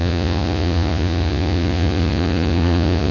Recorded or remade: remade